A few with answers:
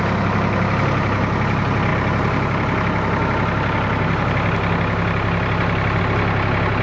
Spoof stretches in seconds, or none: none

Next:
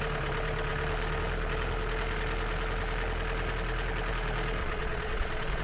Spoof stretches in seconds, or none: 4.6-5.6